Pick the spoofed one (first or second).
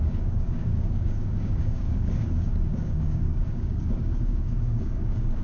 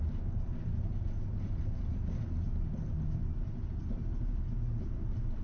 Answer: first